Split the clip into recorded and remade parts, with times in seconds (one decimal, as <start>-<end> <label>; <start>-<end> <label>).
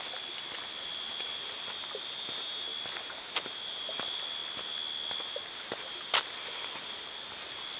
0.0-2.7 remade; 2.7-3.6 recorded; 3.6-4.4 remade; 4.4-6.0 recorded; 6.0-7.8 remade